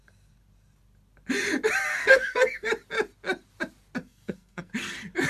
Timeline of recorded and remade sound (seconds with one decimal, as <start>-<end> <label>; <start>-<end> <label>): 0.0-1.9 recorded; 1.9-2.7 remade; 2.7-4.0 recorded; 4.0-4.7 remade; 4.7-5.3 recorded

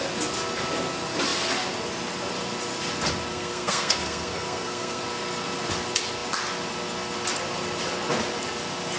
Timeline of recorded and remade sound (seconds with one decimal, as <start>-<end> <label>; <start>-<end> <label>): 0.0-3.3 recorded; 3.3-5.0 remade; 5.0-9.0 recorded

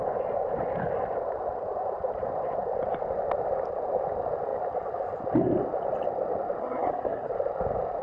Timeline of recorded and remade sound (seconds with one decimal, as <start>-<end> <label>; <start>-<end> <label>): 0.0-6.6 recorded; 6.6-7.3 remade; 7.3-8.0 recorded

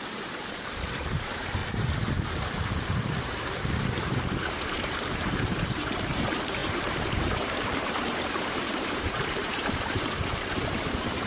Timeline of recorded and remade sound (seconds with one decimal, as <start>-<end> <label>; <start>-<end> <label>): 0.0-1.6 remade; 1.6-2.2 recorded; 2.2-11.3 remade